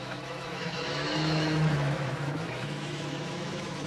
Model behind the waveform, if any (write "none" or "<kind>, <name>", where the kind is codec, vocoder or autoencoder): autoencoder, DAC-VAE